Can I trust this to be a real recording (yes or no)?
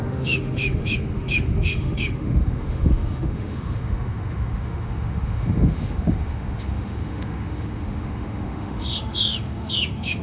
no